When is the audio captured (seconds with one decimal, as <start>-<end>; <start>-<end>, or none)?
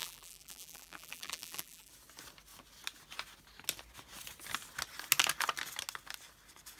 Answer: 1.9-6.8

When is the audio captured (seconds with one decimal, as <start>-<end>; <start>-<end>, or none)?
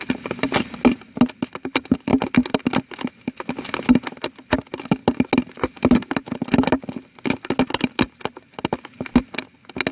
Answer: 0.0-9.9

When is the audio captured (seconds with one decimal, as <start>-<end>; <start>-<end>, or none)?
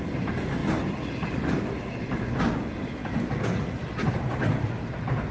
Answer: 0.0-5.3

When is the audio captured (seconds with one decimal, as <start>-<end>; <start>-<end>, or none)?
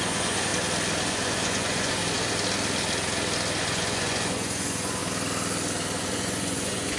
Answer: 0.5-1.1; 2.0-3.6; 5.0-6.0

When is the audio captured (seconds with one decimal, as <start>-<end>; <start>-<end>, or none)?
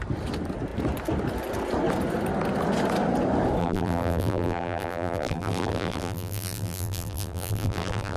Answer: 0.0-3.6